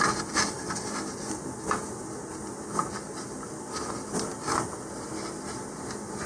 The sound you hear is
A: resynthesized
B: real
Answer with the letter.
B